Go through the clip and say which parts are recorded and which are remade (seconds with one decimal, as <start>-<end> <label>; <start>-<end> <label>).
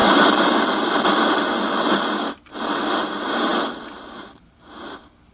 0.0-5.3 recorded